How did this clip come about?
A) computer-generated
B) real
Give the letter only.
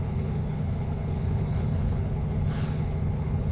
A